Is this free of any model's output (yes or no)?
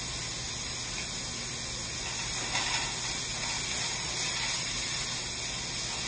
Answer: yes